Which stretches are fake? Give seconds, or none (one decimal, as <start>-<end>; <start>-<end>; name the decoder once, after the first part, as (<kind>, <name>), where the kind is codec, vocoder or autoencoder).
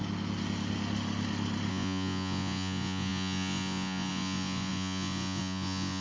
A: 1.7-6.0 (vocoder, Vocos)